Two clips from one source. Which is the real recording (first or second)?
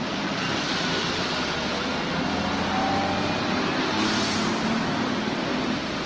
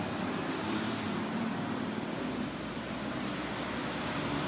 first